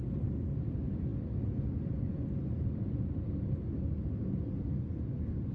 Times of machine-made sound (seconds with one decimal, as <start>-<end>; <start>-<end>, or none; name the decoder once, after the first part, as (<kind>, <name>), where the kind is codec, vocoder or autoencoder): none